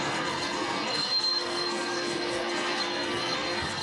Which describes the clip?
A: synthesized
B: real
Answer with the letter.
A